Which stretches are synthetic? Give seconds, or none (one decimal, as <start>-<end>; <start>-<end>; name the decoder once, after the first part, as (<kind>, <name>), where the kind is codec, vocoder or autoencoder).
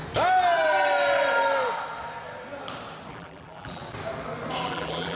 3.1-3.8 (vocoder, BigVGAN v2); 4.6-5.2